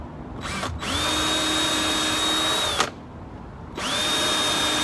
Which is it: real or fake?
real